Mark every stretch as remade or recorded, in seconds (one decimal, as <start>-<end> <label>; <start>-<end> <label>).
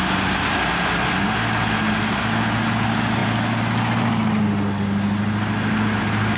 0.0-6.4 recorded